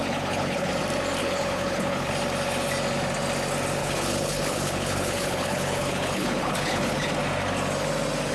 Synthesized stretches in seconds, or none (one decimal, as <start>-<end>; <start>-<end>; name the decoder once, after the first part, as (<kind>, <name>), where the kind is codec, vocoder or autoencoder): 0.0-0.7 (codec, HILCodec); 1.2-2.1; 3.8-7.1